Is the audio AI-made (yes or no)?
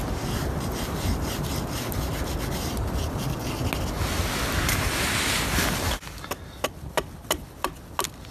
no